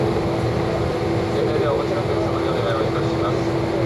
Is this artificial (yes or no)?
no